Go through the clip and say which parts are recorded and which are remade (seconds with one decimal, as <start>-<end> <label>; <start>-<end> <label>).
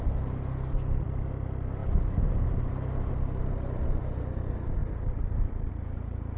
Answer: 0.0-1.8 recorded; 1.8-2.7 remade; 2.7-6.4 recorded